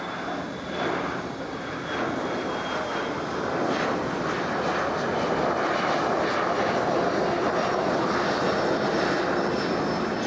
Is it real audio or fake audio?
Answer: real